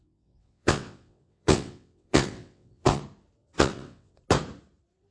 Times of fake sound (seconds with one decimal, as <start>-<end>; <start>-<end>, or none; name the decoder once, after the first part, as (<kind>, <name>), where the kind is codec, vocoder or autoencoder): 0.0-3.0 (vocoder, WaveNeXt); 3.4-4.2